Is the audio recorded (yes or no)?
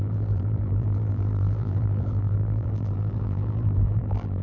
no